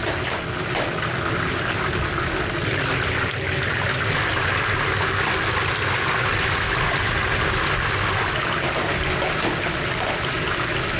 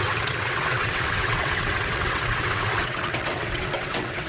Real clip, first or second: first